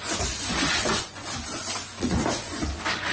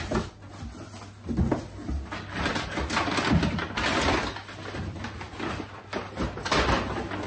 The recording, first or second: second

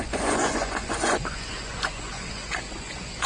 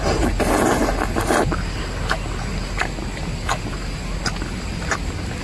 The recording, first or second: second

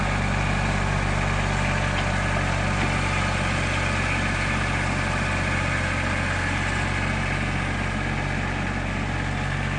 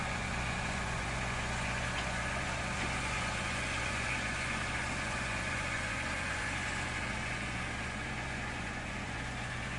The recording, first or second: first